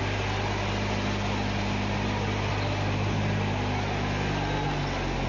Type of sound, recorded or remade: recorded